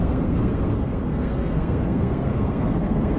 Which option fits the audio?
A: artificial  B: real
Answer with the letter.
A